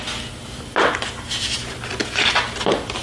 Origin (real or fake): real